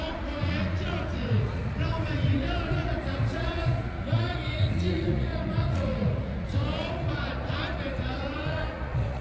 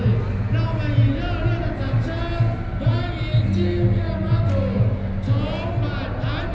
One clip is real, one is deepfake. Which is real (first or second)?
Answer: second